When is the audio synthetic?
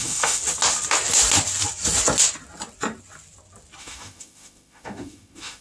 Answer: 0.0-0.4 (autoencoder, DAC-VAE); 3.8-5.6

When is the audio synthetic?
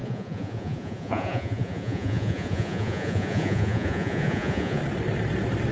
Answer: 0.0-4.8 (vocoder, Vocos)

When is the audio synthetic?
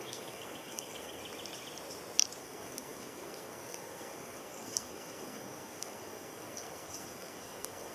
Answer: 0.0-1.2 (codec, SNAC); 2.4-7.9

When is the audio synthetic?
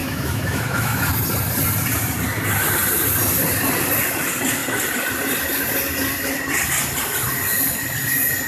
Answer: 0.0-1.1 (autoencoder, DAC-VAE)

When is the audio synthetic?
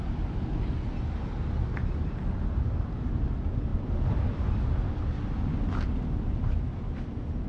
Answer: none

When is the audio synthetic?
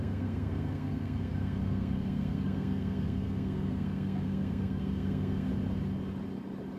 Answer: 0.0-5.5 (codec, SNAC)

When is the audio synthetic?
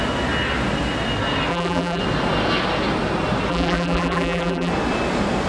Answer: 1.5-2.0 (vocoder, BigVGAN v2); 3.5-4.7